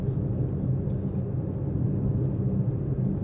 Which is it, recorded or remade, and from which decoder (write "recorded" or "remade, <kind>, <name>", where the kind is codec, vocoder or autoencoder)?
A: recorded